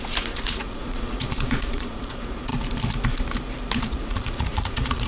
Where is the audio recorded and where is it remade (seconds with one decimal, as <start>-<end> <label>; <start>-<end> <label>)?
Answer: 0.0-2.5 remade; 2.5-3.8 recorded; 3.8-5.1 remade